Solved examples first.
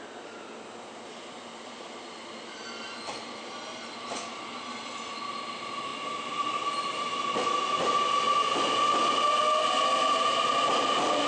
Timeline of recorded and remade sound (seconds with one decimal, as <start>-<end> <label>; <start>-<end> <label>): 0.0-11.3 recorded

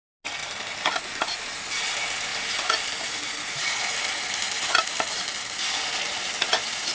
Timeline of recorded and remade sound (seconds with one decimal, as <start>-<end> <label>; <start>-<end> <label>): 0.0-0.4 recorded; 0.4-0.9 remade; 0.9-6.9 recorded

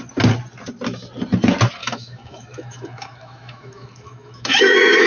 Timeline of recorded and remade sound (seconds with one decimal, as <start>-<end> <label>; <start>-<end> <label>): 0.0-1.8 recorded; 1.8-5.1 remade

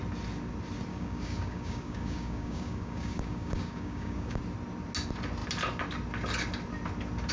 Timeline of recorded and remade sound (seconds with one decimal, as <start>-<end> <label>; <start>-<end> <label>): 0.0-0.9 recorded; 0.9-4.4 remade; 4.4-7.3 recorded

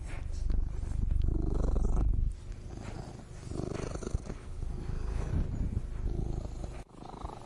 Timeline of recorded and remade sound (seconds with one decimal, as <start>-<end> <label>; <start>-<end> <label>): 0.0-4.3 recorded; 4.3-5.3 remade; 5.3-7.5 recorded

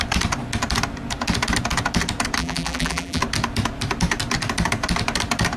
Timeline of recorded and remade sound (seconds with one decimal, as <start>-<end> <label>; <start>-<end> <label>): 0.0-2.4 recorded; 2.4-3.2 remade; 3.2-5.6 recorded

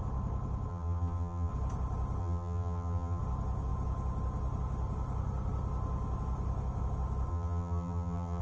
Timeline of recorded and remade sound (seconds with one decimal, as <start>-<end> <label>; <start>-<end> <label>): 0.0-0.7 recorded; 0.7-1.5 remade; 1.5-2.2 recorded; 2.2-3.2 remade; 3.2-7.3 recorded; 7.3-8.4 remade